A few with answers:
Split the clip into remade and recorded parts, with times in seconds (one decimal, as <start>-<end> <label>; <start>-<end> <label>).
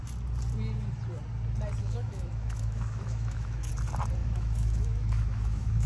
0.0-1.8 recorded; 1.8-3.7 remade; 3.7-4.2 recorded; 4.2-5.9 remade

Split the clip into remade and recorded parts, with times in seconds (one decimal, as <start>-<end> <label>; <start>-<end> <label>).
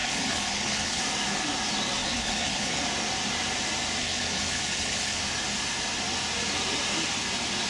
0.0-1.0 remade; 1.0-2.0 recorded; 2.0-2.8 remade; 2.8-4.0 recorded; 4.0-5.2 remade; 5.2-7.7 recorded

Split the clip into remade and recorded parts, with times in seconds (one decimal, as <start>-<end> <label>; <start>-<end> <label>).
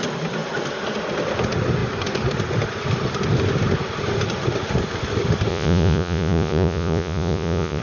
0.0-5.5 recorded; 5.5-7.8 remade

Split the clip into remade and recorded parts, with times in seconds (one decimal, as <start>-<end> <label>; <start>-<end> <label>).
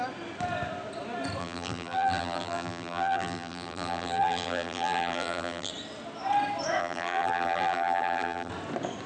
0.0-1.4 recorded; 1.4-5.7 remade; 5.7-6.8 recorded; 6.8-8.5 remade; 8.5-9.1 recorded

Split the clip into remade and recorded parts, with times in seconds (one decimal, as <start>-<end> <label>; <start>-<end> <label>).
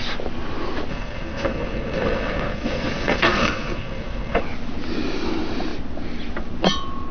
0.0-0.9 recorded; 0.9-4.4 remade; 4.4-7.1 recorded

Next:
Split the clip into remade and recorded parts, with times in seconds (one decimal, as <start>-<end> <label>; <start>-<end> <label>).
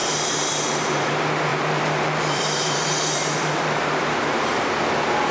0.0-1.1 remade; 1.1-1.5 recorded; 1.5-4.7 remade; 4.7-5.3 recorded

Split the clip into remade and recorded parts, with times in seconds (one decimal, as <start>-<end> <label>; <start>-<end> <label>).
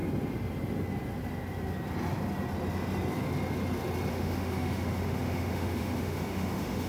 0.0-4.1 recorded; 4.1-6.9 remade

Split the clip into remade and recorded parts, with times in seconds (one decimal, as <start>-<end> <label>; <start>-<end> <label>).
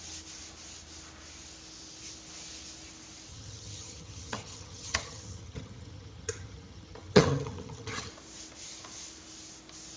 0.0-3.3 recorded; 3.3-8.1 remade; 8.1-10.0 recorded